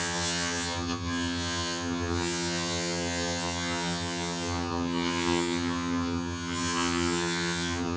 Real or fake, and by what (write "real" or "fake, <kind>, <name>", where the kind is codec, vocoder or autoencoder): fake, vocoder, HiFi-GAN